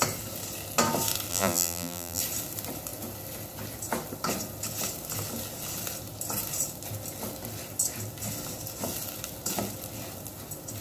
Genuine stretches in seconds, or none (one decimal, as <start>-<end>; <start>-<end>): 0.0-1.3; 2.2-10.8